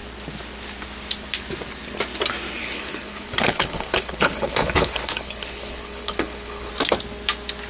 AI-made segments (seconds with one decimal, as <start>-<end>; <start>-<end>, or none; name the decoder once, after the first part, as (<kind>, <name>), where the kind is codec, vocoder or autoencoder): 2.6-6.7 (codec, HILCodec)